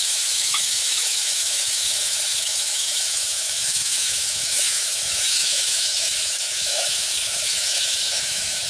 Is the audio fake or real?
fake